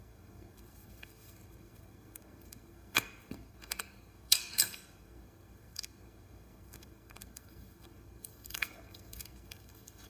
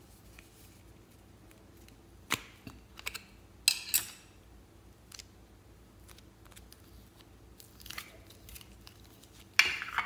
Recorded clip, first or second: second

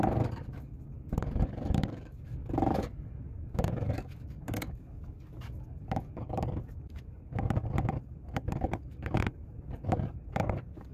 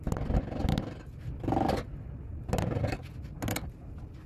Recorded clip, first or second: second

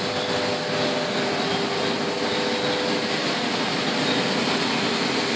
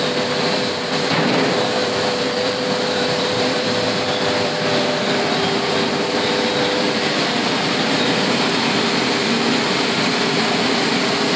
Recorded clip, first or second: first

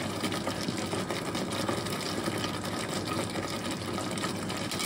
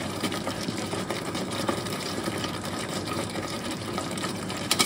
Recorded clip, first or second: first